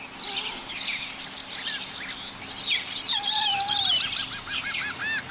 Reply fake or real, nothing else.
real